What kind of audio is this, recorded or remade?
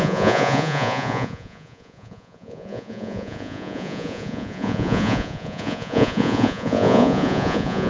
remade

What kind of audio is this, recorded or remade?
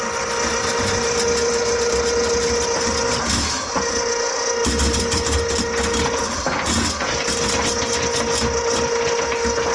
recorded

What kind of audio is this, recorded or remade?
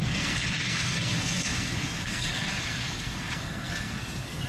remade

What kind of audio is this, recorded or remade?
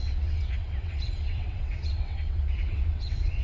remade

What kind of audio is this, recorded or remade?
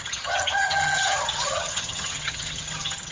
remade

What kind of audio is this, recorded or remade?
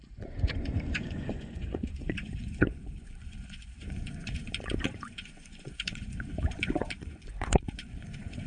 remade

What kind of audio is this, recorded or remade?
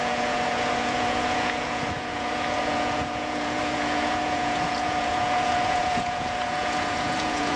remade